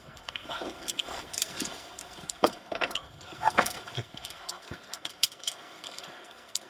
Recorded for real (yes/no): no